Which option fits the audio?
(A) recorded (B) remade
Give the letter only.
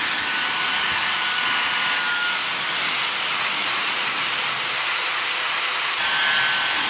A